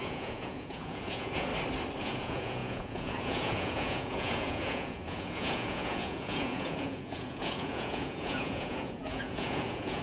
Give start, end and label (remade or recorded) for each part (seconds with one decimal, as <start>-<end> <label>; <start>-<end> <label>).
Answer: 0.0-1.5 remade; 1.5-2.0 recorded; 2.0-10.0 remade